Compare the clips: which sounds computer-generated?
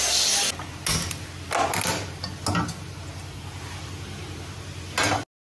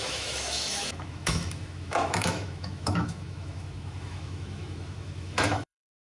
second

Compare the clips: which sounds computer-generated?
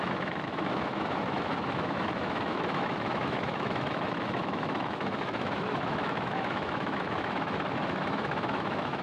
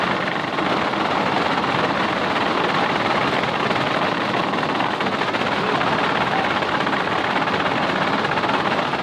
first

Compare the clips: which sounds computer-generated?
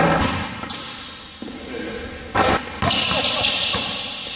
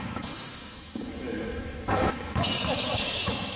second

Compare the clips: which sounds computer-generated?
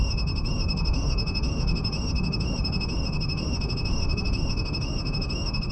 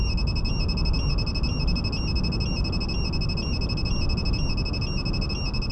first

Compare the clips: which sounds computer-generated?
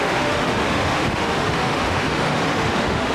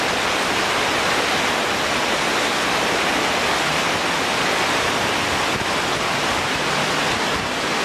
first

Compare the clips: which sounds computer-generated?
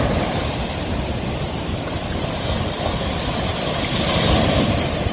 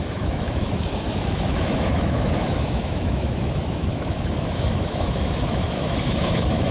second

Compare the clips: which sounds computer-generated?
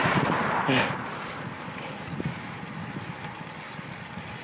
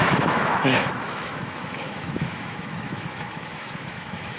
second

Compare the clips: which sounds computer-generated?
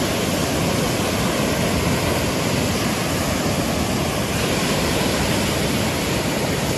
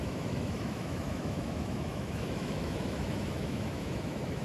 second